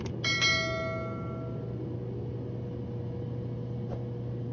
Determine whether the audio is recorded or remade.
recorded